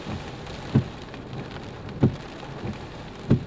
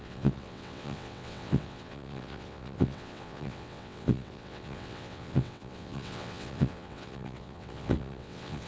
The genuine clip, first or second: first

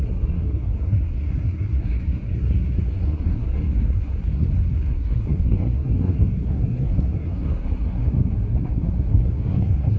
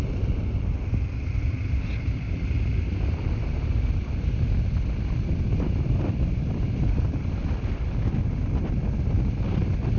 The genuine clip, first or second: second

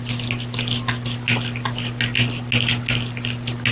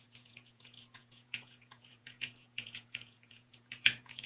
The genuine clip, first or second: first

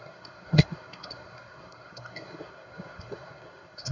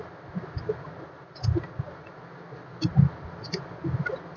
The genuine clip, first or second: second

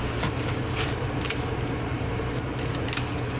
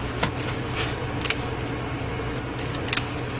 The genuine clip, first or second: second